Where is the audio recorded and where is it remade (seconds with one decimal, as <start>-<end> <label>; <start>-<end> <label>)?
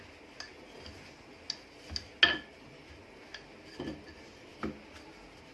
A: 0.0-5.5 recorded